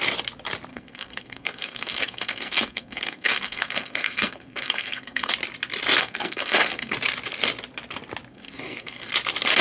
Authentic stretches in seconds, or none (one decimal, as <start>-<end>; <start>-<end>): 0.0-0.7; 5.3-6.0; 6.9-8.3; 9.1-9.6